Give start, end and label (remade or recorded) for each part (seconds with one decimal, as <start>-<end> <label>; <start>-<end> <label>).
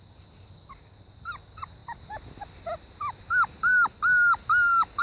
0.0-5.0 recorded